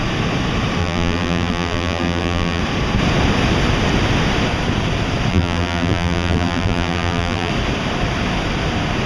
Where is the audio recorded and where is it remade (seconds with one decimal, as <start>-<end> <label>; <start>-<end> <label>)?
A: 0.0-0.8 recorded; 0.8-2.6 remade; 2.6-5.3 recorded; 5.3-7.5 remade; 7.5-9.1 recorded